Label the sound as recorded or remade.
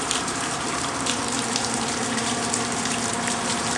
remade